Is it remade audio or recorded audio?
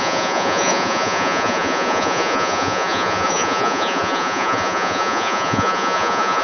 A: remade